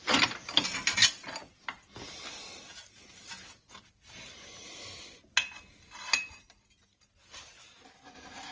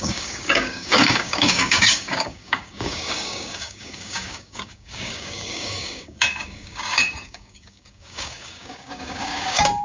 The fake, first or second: second